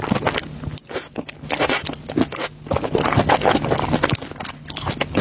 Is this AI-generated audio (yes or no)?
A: no